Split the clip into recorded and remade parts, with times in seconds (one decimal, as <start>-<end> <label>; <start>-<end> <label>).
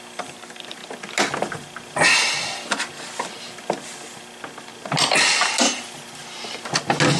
0.0-7.2 recorded